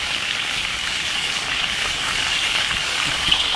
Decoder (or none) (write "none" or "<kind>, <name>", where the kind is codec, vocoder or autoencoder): codec, DAC